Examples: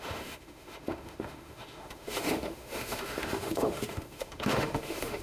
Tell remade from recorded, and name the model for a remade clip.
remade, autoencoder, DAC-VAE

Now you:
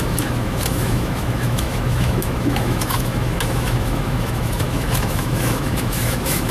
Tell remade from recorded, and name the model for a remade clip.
remade, autoencoder, DAC-VAE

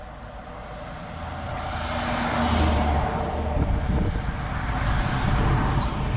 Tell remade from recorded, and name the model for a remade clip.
recorded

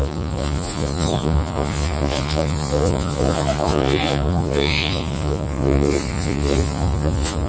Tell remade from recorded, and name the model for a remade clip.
remade, vocoder, Vocos